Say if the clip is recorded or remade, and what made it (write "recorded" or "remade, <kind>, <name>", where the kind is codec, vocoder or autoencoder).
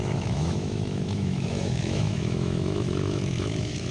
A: remade, autoencoder, DAC-VAE